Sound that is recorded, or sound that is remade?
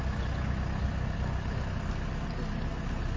recorded